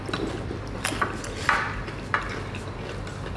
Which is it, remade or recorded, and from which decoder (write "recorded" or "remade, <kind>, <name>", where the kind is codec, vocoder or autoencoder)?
recorded